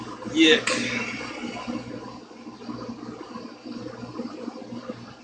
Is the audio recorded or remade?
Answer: recorded